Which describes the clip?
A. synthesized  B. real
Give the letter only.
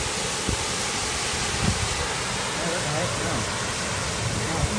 B